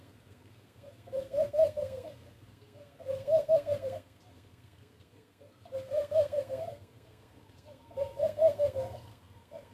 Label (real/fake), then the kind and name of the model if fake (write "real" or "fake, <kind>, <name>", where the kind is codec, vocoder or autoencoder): fake, codec, SNAC